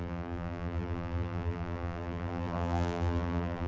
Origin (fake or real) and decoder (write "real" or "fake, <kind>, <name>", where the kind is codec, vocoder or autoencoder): fake, vocoder, BigVGAN v2